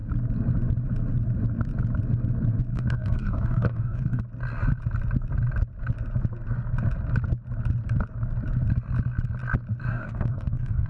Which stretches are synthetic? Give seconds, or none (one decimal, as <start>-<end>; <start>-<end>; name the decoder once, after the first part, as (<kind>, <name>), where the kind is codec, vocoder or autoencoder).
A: 2.7-4.2 (codec, DAC); 9.9-10.9